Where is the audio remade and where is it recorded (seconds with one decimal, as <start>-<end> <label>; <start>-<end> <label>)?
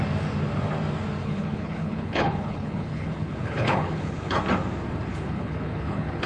0.0-1.2 recorded; 1.2-4.4 remade; 4.4-5.1 recorded; 5.1-6.3 remade